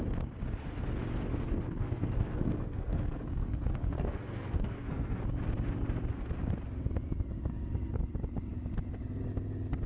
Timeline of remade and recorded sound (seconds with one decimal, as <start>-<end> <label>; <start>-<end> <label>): 0.0-1.3 recorded; 1.3-5.2 remade; 5.2-9.9 recorded